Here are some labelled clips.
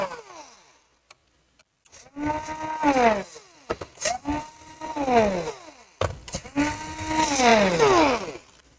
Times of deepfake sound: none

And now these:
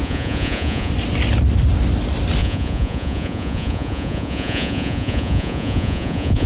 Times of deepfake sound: 0.0-0.9 (vocoder, Vocos); 2.4-6.5

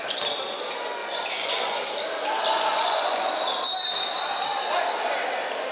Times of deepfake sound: 1.0-1.8 (vocoder, Vocos); 2.7-3.3

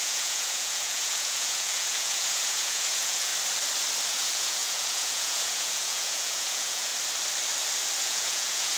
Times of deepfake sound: 0.0-3.3 (vocoder, Vocos); 4.1-6.9; 8.0-8.8

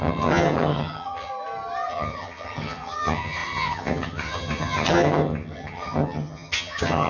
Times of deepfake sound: 0.0-1.3 (vocoder, HiFi-GAN); 1.9-7.1

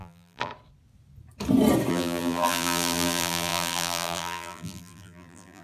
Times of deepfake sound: 0.0-0.5 (vocoder, BigVGAN v2); 1.9-5.6